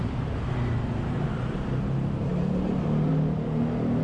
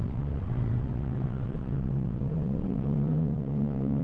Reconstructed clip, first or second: second